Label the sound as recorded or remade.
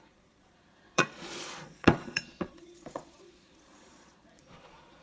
remade